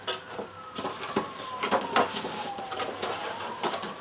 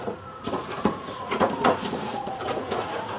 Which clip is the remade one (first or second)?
second